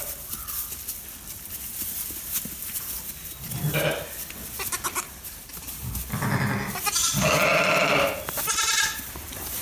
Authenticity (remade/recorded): recorded